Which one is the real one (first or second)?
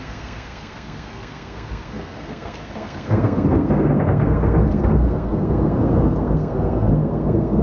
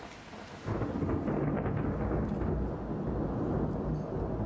second